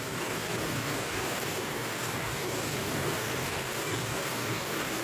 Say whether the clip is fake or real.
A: fake